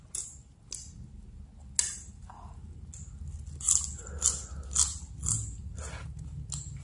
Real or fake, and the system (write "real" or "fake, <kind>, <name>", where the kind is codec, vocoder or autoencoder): real